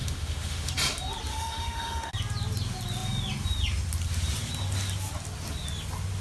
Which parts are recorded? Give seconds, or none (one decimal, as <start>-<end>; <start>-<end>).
0.7-1.3; 2.1-6.2